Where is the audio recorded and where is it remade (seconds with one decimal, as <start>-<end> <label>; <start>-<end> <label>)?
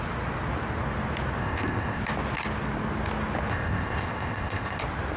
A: 0.0-1.4 recorded; 1.4-2.0 remade; 2.0-3.5 recorded; 3.5-4.8 remade; 4.8-5.2 recorded